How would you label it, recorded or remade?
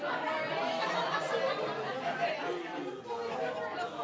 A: recorded